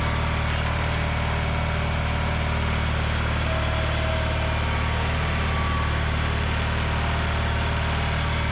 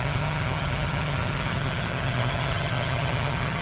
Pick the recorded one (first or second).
first